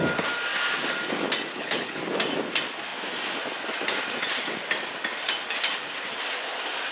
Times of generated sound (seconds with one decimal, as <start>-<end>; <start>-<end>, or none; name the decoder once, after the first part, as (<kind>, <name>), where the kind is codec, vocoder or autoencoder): 1.5-2.0 (codec, HILCodec)